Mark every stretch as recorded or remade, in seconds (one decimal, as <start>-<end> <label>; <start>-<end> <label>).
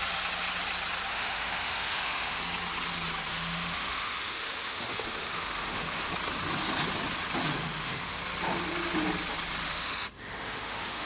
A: 0.0-1.1 recorded; 1.1-2.4 remade; 2.4-3.3 recorded; 3.3-6.1 remade; 6.1-7.6 recorded; 7.6-8.2 remade; 8.2-9.6 recorded; 9.6-11.1 remade